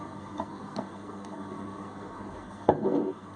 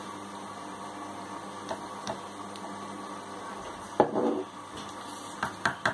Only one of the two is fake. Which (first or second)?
first